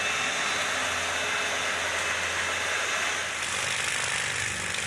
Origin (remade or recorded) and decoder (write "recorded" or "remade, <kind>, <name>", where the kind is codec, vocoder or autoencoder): recorded